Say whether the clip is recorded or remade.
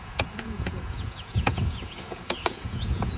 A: remade